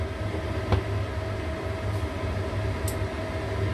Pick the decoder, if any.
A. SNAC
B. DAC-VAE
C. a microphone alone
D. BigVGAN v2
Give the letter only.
C